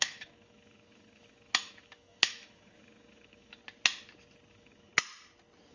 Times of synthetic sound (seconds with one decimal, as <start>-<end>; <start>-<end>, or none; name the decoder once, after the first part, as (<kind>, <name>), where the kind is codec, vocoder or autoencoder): 0.0-3.6 (autoencoder, DAC-VAE); 4.5-4.9